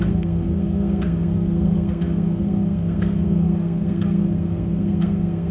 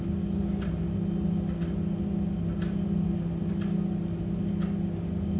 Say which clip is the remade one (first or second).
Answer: first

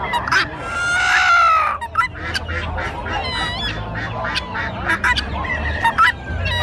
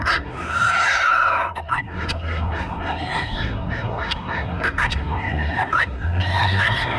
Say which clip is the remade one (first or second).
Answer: second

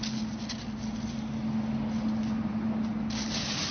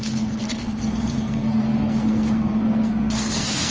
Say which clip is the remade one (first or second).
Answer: second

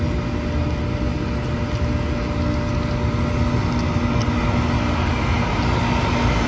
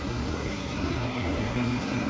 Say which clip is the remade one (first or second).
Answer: second